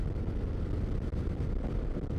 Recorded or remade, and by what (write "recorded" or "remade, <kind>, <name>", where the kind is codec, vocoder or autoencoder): recorded